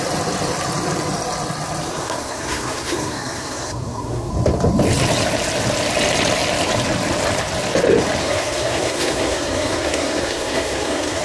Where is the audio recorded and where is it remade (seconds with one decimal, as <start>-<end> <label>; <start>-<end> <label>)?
0.0-1.9 recorded; 1.9-4.3 remade; 4.3-8.2 recorded; 8.2-11.2 remade